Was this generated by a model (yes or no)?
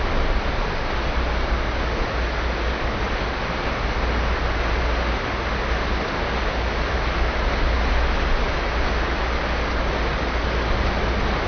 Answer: no